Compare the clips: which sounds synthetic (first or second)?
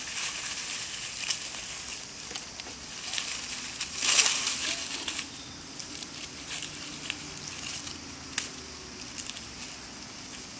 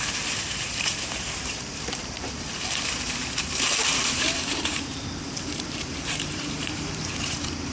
second